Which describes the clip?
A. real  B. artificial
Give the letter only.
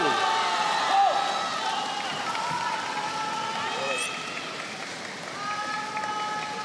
A